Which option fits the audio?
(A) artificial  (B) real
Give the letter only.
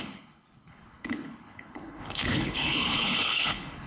A